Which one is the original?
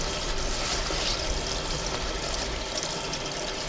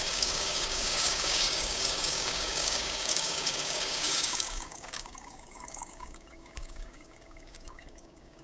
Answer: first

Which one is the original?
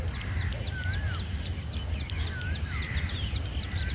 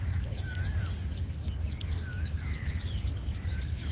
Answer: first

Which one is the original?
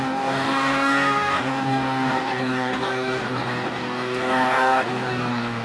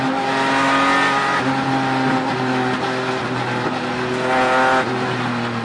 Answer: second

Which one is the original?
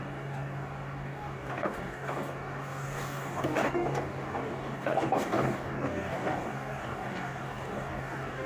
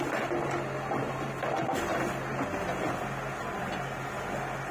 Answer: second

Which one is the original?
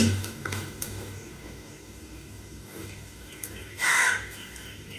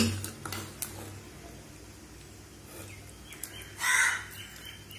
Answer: second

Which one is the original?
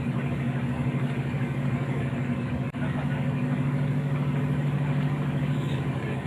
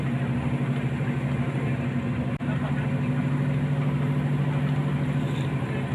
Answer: second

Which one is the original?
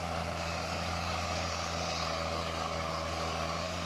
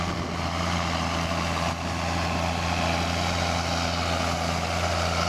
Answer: second